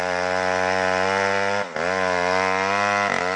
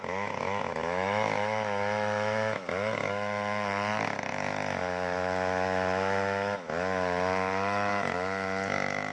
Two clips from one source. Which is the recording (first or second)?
first